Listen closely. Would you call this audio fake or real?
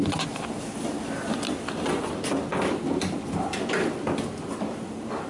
real